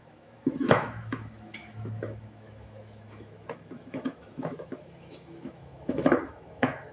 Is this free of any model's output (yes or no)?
no